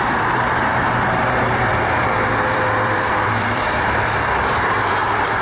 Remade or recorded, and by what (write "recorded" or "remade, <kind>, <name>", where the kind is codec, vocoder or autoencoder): remade, vocoder, BigVGAN v2